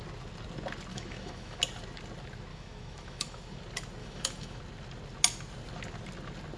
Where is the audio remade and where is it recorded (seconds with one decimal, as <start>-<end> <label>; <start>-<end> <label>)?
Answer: 0.0-0.9 recorded; 0.9-1.6 remade; 1.6-2.5 recorded; 2.5-3.6 remade; 3.6-4.0 recorded; 4.0-4.6 remade; 4.6-6.6 recorded